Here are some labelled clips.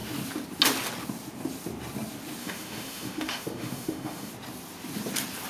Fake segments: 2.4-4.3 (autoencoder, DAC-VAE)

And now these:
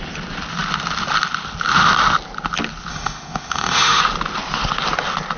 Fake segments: 2.9-4.0 (autoencoder, DAC-VAE)

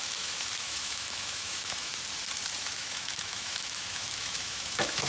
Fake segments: 0.0-1.9 (autoencoder, DAC-VAE); 2.6-5.1

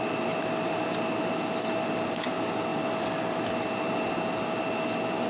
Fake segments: none